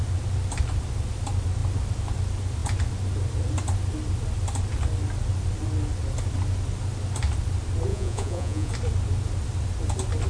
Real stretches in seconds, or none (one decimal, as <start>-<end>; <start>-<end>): 0.0-7.9; 8.7-10.3